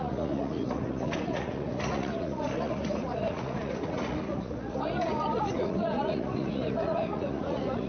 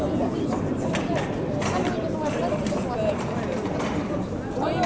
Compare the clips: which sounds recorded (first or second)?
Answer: second